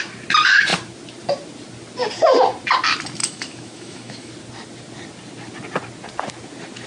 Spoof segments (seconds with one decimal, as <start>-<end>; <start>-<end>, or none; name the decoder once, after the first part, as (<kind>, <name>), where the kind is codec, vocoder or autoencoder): 3.2-4.3 (autoencoder, DAC-VAE)

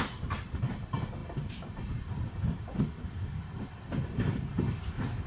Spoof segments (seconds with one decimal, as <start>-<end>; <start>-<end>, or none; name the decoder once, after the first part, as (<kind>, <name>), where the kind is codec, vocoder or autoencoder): 0.0-1.2 (vocoder, BigVGAN v2); 4.0-5.3

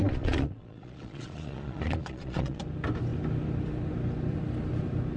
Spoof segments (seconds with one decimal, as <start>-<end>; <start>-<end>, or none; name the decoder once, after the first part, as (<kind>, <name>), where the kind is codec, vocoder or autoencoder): 0.0-2.6 (vocoder, Vocos)

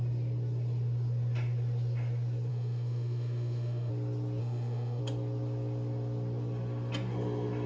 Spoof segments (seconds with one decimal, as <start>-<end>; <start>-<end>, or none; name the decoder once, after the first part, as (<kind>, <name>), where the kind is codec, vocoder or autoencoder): 2.5-3.9 (autoencoder, DAC-VAE); 4.4-5.0

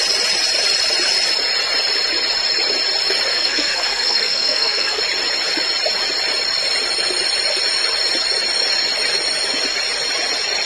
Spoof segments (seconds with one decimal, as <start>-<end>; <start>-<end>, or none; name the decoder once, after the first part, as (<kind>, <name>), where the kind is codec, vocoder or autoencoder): 3.3-5.0 (codec, SNAC)

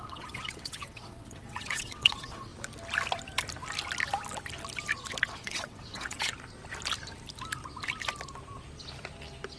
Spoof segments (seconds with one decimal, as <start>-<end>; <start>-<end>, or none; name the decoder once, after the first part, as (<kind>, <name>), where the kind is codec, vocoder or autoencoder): 0.0-2.5 (vocoder, WaveNeXt); 5.2-6.3

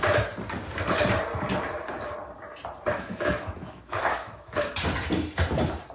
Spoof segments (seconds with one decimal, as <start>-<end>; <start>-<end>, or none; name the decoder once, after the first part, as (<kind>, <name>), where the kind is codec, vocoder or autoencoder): 2.9-4.7 (autoencoder, DAC-VAE)

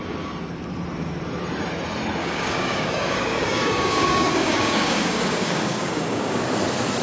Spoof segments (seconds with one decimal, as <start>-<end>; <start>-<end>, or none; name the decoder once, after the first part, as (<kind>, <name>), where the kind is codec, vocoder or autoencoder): 2.2-6.4 (codec, DAC)